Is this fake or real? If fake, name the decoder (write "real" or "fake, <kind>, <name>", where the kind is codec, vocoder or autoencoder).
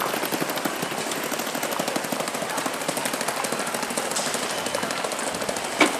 real